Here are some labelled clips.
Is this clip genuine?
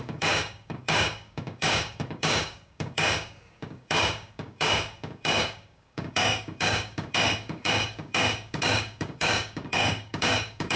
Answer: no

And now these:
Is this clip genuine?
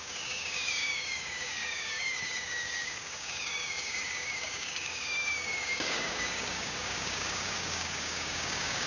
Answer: no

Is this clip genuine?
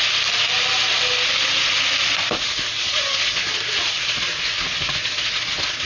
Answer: yes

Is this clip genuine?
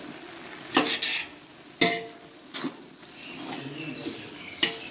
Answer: yes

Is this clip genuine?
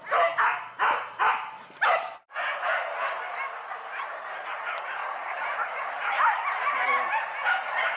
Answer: yes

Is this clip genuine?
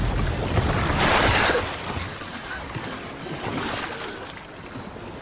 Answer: yes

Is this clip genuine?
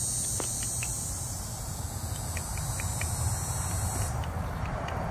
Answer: yes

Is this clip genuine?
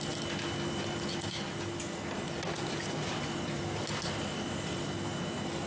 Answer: yes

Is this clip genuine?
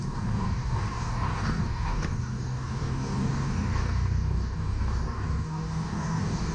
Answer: no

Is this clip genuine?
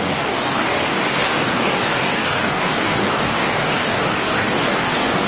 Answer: no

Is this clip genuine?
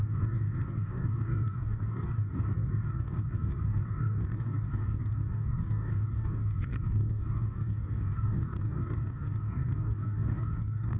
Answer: no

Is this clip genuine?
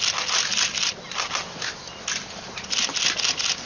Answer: yes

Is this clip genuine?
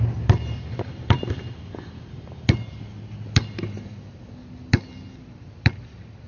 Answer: yes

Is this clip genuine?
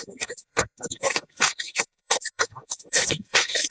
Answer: no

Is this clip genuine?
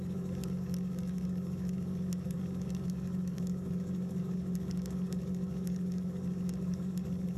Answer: no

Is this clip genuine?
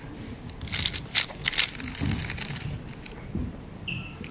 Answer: yes